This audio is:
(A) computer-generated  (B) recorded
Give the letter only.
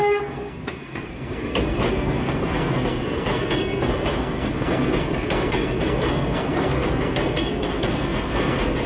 A